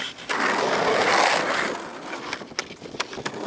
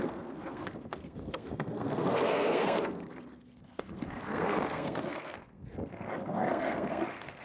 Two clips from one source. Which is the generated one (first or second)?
second